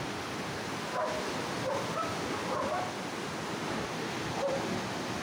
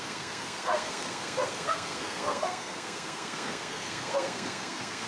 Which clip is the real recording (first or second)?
first